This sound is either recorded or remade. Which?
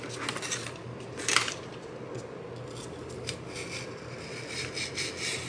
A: recorded